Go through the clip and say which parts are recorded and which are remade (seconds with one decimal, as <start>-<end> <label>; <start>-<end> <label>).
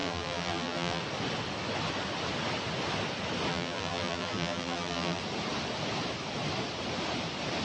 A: 0.0-1.0 remade; 1.0-3.5 recorded; 3.5-5.2 remade; 5.2-7.6 recorded